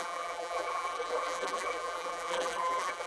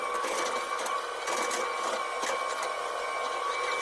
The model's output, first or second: first